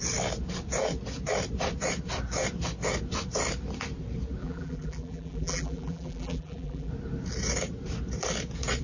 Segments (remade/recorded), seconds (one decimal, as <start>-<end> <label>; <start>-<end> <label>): 0.0-4.4 recorded; 4.4-6.9 remade; 6.9-8.8 recorded